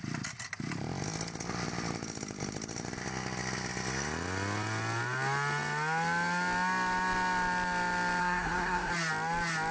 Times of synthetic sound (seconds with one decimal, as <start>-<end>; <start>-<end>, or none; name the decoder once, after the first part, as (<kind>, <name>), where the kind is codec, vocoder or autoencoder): 8.2-8.9 (codec, SNAC)